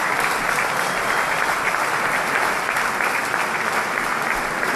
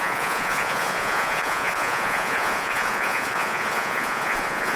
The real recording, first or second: first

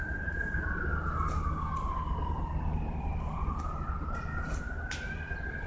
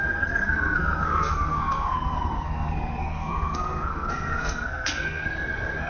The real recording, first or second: first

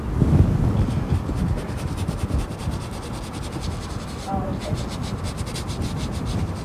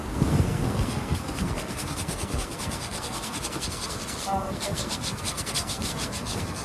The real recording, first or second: first